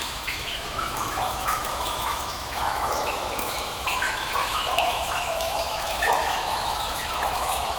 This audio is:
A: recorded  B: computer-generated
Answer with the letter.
B